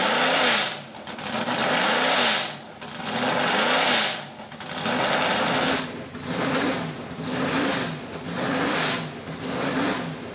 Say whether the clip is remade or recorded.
recorded